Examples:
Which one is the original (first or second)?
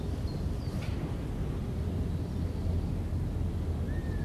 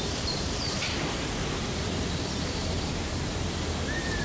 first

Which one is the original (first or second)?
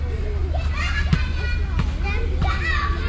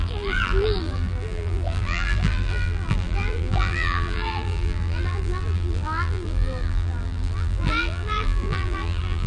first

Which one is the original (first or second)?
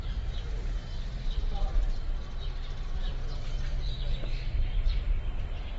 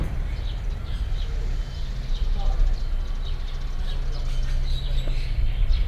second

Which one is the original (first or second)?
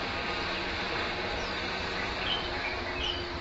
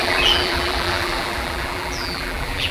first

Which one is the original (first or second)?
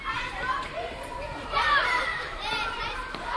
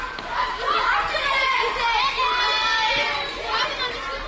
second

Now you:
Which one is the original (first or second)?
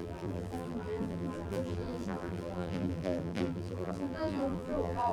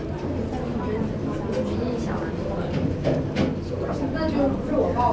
second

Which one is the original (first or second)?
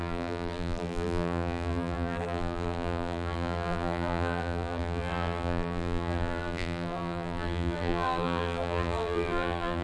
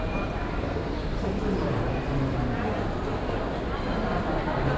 second